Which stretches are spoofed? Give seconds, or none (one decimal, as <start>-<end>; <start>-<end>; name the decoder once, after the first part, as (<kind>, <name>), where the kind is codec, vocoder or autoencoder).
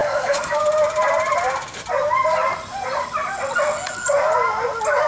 0.0-0.6 (codec, DAC)